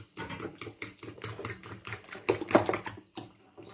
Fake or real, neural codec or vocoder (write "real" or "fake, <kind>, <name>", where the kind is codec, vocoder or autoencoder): real